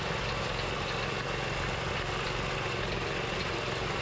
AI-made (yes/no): no